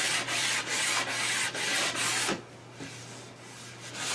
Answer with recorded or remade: recorded